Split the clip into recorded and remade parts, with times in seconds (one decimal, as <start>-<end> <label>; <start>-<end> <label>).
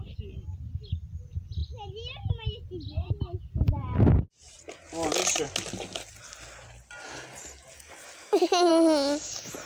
0.0-8.2 recorded; 8.2-8.7 remade; 8.7-9.7 recorded